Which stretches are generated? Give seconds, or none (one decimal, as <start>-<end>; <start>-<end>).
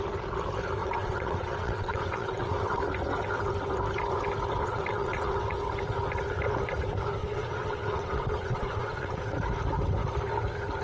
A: 0.8-2.8; 4.6-5.6; 7.2-9.2